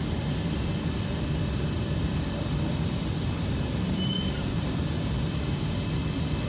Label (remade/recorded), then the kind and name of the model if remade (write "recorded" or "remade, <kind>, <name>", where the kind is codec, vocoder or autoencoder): remade, vocoder, BigVGAN v2